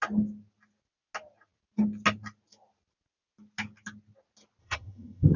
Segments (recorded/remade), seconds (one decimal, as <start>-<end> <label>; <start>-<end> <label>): 0.0-4.6 recorded; 4.6-5.4 remade

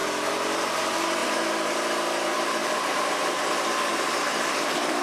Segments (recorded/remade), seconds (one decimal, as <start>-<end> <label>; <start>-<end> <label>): 0.0-1.2 recorded; 1.2-1.7 remade; 1.7-2.6 recorded; 2.6-3.4 remade; 3.4-3.9 recorded; 3.9-5.0 remade

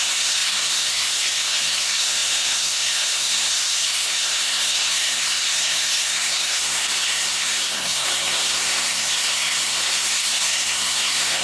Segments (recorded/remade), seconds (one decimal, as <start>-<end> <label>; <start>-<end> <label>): 0.0-11.4 remade

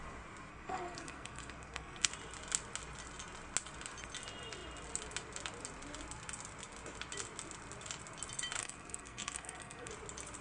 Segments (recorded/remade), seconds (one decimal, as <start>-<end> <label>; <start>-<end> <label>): 0.0-0.5 recorded; 0.5-2.1 remade; 2.1-8.6 recorded; 8.6-9.9 remade; 9.9-10.4 recorded